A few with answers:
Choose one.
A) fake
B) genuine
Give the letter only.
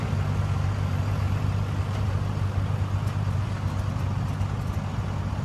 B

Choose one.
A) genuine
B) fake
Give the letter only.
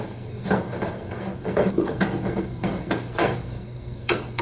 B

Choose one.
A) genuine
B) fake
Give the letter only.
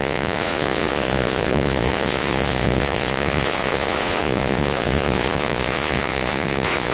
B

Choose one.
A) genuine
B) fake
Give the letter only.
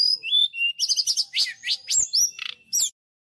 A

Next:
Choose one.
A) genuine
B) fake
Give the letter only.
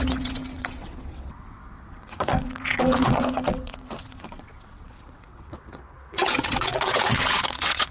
B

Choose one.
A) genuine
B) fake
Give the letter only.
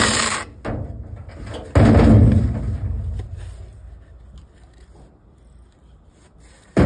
A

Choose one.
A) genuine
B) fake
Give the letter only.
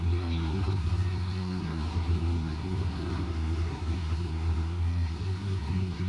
B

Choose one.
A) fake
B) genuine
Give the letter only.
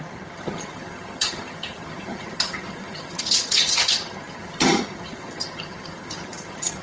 A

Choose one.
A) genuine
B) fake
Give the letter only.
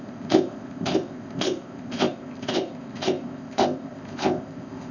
B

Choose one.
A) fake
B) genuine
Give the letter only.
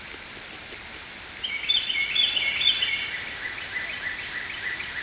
B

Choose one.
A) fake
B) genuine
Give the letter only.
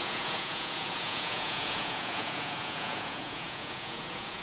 A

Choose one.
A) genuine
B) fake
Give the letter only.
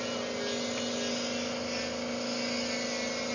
A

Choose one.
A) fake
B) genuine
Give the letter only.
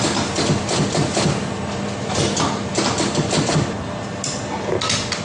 B